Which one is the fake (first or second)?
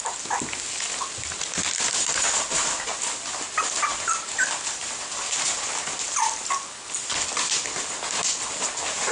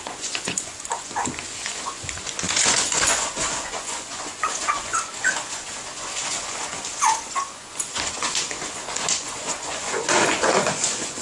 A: second